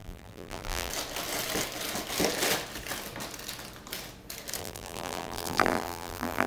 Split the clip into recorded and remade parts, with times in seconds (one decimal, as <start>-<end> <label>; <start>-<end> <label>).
0.0-0.9 remade; 0.9-4.6 recorded; 4.6-6.5 remade